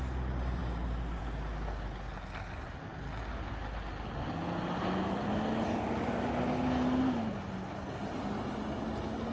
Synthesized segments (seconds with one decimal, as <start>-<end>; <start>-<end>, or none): none